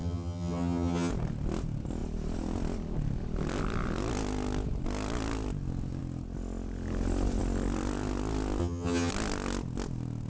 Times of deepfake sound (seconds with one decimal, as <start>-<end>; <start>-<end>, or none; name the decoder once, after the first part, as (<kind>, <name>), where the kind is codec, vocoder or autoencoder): 0.0-1.1 (vocoder, HiFi-GAN); 8.6-9.1